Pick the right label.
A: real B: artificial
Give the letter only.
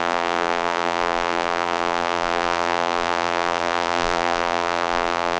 B